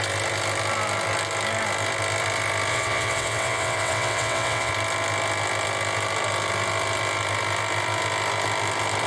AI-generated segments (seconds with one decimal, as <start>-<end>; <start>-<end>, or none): 2.7-4.7